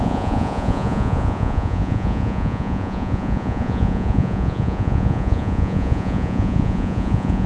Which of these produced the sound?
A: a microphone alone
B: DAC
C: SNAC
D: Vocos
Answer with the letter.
D